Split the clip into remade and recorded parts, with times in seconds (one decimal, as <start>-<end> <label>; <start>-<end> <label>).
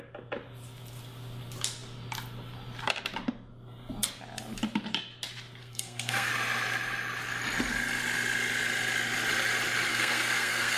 0.0-5.6 recorded; 5.6-6.3 remade; 6.3-9.9 recorded; 9.9-10.8 remade